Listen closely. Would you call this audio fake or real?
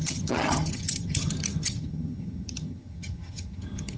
fake